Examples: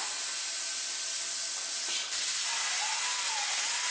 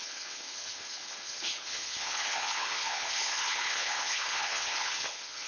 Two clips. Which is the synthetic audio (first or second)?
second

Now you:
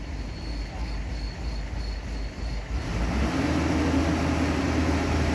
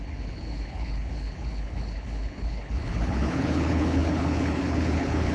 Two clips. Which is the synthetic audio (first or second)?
second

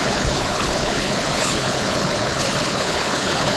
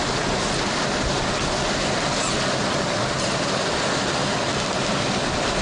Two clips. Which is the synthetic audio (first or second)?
first